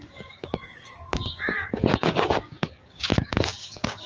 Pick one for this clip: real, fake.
fake